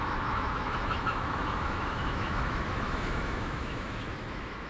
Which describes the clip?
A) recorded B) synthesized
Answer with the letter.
B